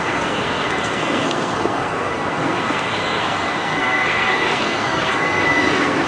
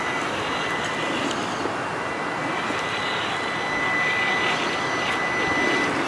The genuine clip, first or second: second